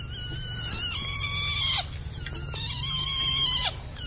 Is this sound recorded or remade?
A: recorded